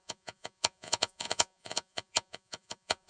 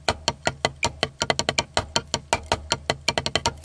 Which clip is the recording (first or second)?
second